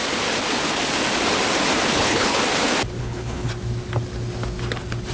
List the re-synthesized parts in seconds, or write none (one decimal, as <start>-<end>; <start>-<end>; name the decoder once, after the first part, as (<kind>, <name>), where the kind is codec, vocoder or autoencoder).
1.9-2.4 (codec, HILCodec); 3.0-3.5